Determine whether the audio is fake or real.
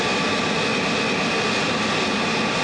real